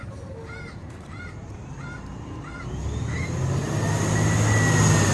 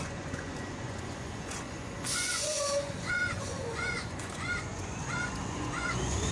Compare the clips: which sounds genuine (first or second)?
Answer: first